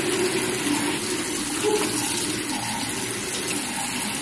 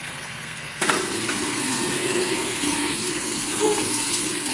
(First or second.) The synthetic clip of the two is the second